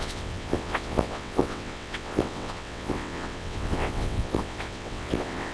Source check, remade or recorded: remade